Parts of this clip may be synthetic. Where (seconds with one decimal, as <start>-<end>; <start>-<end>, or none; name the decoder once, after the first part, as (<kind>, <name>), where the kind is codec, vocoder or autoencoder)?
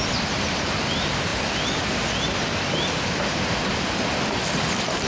none